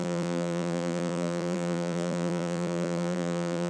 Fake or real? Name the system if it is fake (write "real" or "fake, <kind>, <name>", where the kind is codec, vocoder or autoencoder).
fake, vocoder, BigVGAN v2